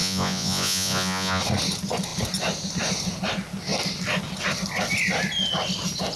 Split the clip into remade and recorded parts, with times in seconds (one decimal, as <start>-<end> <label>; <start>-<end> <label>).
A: 0.0-1.4 remade; 1.4-6.2 recorded